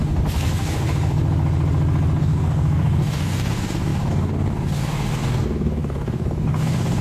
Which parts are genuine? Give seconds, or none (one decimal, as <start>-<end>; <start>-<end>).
1.2-2.2